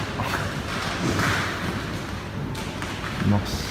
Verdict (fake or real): real